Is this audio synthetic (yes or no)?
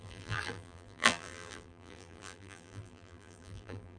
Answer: yes